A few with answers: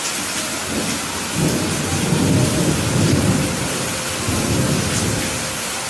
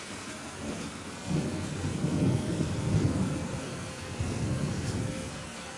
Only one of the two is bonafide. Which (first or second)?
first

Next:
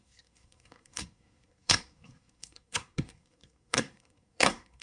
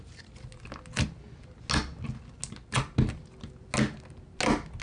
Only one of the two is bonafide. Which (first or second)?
second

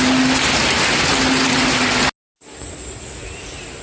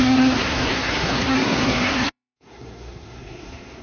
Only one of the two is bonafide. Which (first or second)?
first